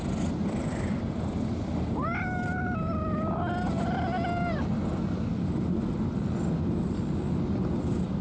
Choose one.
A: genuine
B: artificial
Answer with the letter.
A